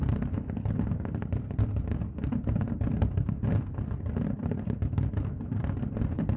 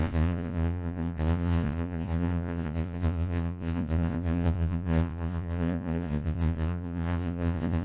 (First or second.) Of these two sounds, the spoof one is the second